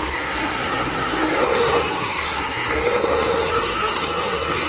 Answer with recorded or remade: remade